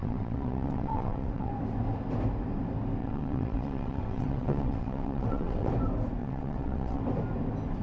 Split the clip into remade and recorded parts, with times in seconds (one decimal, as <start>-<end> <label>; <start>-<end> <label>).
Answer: 0.0-1.5 remade; 1.5-3.0 recorded; 3.0-5.7 remade; 5.7-6.2 recorded; 6.2-7.0 remade; 7.0-7.8 recorded